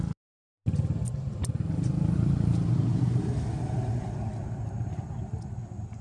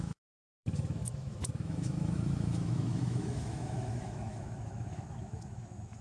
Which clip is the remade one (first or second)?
second